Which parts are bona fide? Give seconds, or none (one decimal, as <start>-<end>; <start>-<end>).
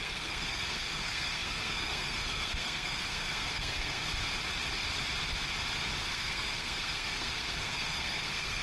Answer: 4.1-6.1